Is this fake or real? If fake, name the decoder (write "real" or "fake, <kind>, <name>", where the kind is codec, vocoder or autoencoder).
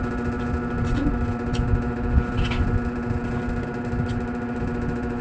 real